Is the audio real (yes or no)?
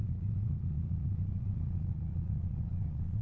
no